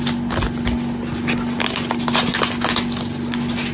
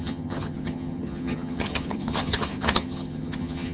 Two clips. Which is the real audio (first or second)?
first